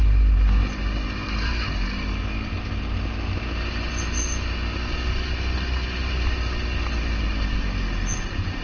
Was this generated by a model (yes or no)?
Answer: no